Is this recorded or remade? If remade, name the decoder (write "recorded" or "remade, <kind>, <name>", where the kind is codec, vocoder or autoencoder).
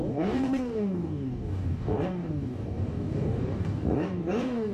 remade, codec, DAC